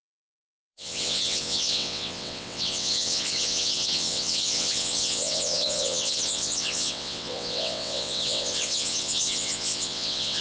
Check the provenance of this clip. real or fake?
fake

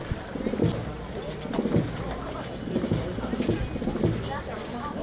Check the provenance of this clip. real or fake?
real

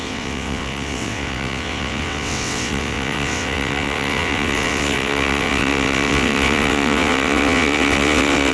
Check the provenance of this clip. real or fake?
fake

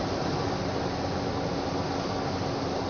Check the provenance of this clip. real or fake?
real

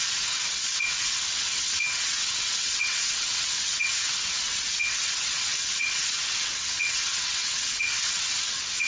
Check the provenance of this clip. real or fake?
fake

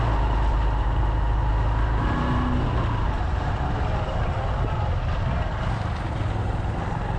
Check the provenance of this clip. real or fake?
real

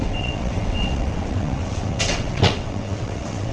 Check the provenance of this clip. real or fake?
fake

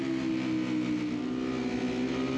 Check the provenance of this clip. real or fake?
real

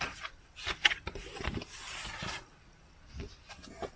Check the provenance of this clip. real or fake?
real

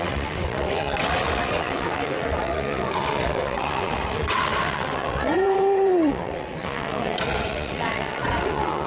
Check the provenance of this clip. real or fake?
fake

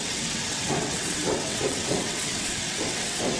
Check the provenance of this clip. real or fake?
fake